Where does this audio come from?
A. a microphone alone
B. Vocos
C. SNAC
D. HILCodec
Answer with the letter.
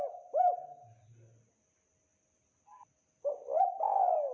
A